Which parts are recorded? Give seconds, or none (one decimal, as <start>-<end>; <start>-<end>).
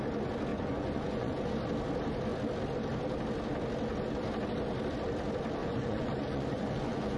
0.0-0.5; 1.5-5.6